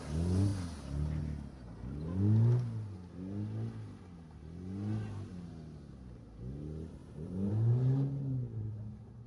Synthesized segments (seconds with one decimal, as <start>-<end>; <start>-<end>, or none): 7.0-7.5